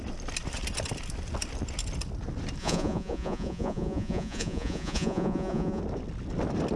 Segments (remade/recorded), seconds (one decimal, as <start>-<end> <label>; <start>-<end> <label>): 0.0-2.6 recorded; 2.6-5.8 remade; 5.8-6.8 recorded